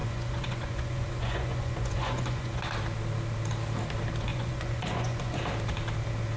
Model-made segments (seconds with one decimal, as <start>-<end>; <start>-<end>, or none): 0.0-2.6; 4.3-5.4